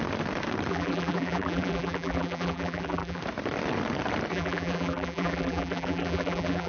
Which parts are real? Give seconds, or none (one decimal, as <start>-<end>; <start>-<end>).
0.0-0.7; 3.2-4.3